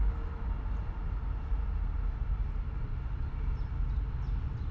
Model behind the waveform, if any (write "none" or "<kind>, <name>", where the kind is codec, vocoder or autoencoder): none